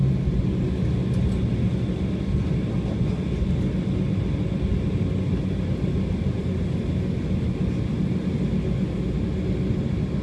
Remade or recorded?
recorded